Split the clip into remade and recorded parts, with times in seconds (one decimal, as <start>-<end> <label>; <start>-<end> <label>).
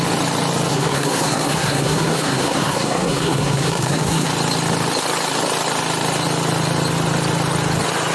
0.0-0.7 recorded; 0.7-4.3 remade; 4.3-8.1 recorded